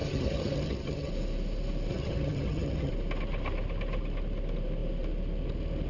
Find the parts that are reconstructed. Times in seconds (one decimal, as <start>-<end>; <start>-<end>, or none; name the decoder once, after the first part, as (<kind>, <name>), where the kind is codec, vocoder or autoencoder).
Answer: 0.0-1.1 (vocoder, HiFi-GAN); 1.9-2.9